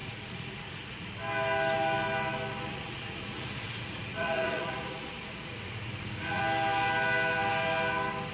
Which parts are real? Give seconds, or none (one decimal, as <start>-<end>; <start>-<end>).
1.1-2.7; 6.4-8.3